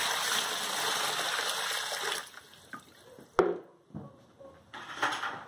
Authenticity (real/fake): real